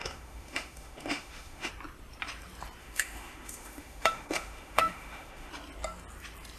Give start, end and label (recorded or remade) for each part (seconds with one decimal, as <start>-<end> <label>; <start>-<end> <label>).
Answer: 0.0-1.7 remade; 1.7-2.8 recorded; 2.8-5.5 remade; 5.5-6.6 recorded